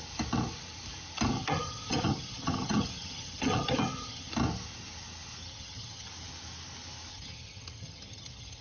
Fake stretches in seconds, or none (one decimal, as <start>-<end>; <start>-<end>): 1.3-4.3; 5.4-6.1; 7.1-8.6